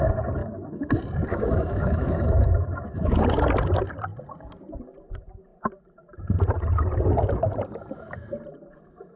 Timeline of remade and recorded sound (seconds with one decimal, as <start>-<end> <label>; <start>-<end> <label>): 0.0-0.4 recorded; 0.4-0.9 remade; 0.9-1.3 recorded; 1.3-3.2 remade; 3.2-9.2 recorded